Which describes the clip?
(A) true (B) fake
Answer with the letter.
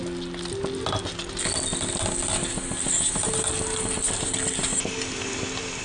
A